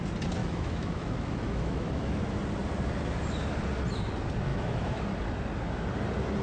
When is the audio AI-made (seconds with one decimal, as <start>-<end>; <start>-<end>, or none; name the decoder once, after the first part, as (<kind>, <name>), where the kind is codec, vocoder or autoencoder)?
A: 0.4-2.2 (autoencoder, DAC-VAE); 4.5-5.0